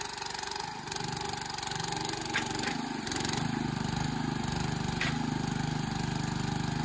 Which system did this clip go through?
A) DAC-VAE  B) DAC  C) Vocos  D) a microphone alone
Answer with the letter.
D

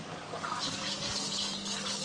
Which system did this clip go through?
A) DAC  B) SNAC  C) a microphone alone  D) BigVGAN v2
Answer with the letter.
A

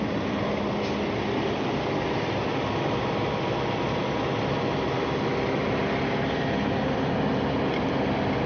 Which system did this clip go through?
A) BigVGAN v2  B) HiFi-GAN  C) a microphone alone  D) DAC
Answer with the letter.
C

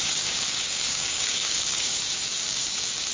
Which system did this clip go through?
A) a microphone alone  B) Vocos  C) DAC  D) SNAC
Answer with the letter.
C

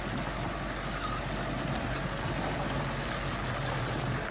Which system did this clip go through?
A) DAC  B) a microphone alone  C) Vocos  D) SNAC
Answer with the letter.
B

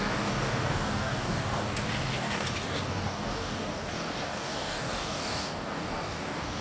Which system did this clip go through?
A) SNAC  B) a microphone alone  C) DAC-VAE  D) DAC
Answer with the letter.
D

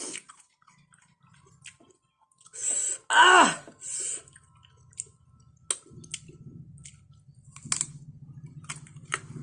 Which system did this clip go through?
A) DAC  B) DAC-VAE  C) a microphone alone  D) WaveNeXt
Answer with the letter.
C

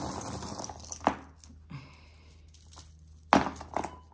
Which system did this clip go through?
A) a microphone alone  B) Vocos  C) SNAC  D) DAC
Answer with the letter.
A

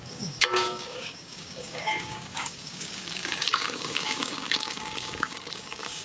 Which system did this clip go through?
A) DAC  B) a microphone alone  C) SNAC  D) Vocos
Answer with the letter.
A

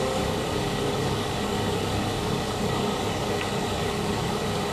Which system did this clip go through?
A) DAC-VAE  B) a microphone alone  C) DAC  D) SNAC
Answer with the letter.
C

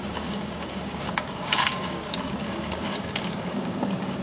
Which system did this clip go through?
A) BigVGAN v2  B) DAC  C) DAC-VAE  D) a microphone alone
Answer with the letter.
B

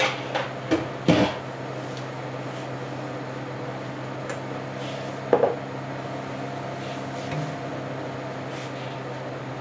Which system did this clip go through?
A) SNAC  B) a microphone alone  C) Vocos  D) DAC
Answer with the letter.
B